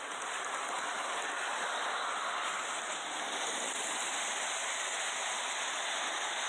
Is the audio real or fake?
real